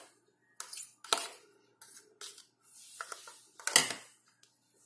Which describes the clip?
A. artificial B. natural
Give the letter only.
B